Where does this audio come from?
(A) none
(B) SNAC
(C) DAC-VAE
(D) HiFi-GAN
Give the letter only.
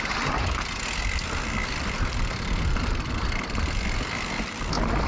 A